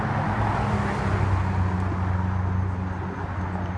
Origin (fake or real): real